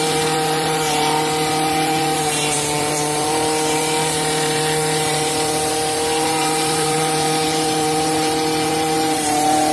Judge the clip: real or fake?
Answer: fake